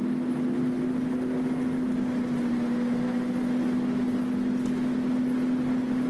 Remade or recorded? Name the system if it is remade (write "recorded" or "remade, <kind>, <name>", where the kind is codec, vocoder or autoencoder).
recorded